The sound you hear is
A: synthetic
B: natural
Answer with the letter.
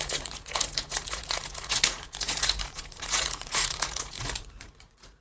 A